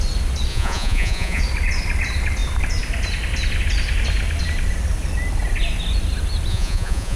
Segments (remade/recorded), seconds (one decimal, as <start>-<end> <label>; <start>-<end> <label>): 0.0-0.5 recorded; 0.5-1.4 remade; 1.4-6.5 recorded; 6.5-7.2 remade